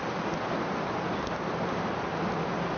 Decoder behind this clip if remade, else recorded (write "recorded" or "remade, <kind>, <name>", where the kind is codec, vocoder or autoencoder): recorded